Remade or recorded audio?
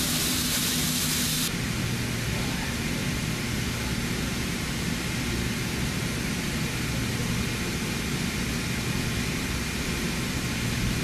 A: remade